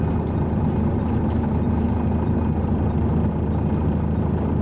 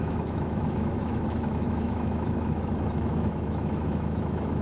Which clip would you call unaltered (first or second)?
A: first